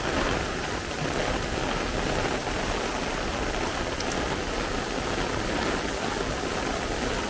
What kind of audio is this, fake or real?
real